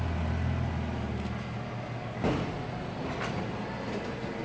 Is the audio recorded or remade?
recorded